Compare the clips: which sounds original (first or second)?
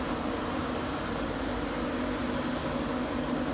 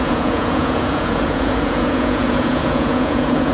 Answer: first